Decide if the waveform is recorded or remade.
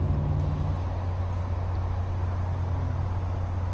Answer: recorded